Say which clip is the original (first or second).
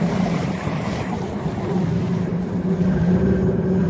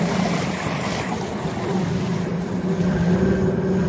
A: second